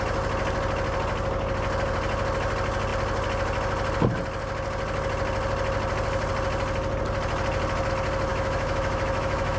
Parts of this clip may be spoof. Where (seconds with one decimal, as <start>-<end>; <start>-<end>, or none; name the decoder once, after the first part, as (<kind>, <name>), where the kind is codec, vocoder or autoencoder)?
8.3-9.6 (autoencoder, DAC-VAE)